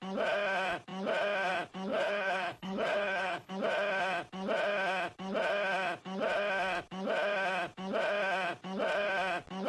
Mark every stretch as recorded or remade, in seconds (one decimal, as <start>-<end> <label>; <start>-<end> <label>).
0.0-1.9 recorded; 1.9-3.5 remade; 3.5-9.7 recorded